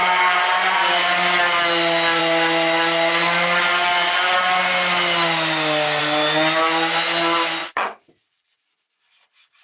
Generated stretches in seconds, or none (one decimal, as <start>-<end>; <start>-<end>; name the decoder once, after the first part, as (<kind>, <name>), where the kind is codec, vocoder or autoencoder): 7.6-8.6 (vocoder, WaveNeXt)